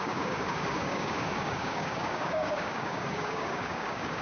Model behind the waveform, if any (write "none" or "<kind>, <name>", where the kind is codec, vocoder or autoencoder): codec, DAC